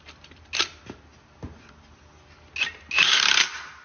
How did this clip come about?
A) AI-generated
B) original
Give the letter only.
B